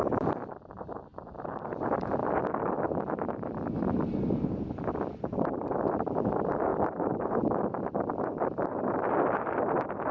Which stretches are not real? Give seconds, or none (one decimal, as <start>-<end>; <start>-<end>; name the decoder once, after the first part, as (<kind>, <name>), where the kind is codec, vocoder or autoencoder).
1.1-1.8 (vocoder, BigVGAN v2); 6.7-7.3